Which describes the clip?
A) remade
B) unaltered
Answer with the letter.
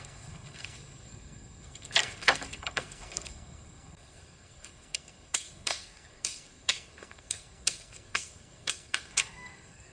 A